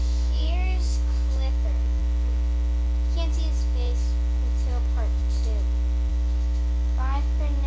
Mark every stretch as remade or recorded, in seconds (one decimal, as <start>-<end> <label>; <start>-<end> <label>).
0.0-2.0 remade; 2.0-4.7 recorded; 4.7-5.2 remade; 5.2-6.1 recorded; 6.1-7.7 remade